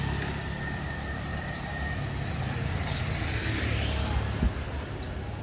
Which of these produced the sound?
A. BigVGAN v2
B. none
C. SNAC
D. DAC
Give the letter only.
B